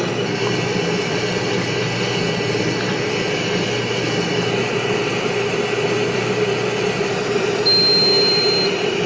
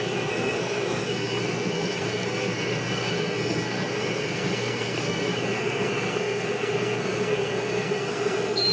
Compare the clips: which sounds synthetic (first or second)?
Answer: second